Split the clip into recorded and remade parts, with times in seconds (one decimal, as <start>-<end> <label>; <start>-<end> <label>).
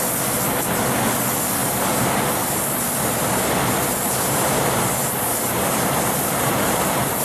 0.0-1.6 recorded; 1.6-2.2 remade; 2.2-3.9 recorded; 3.9-7.2 remade